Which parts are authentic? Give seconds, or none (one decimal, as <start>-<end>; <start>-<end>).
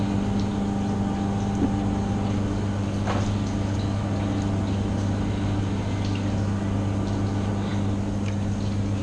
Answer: 0.0-9.0